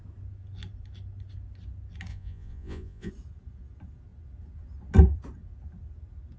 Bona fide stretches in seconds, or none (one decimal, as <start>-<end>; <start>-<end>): 0.0-2.1; 3.1-6.4